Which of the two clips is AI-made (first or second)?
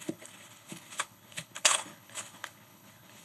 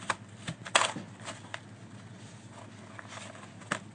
first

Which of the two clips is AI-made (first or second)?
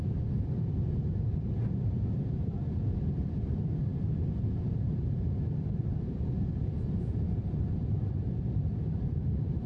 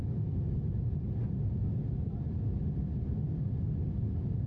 first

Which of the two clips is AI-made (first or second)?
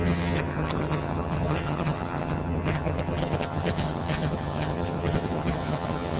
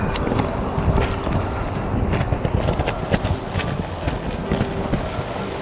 first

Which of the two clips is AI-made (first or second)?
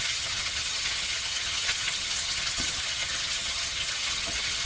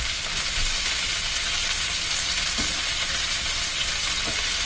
first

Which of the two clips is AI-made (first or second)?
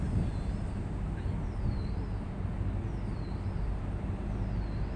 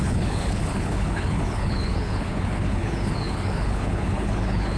second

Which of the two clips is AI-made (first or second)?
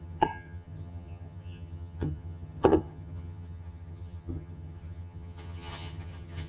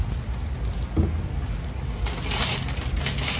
first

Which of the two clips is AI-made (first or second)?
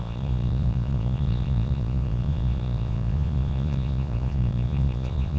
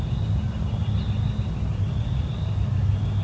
first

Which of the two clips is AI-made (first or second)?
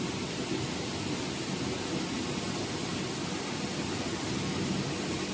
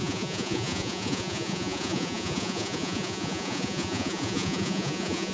second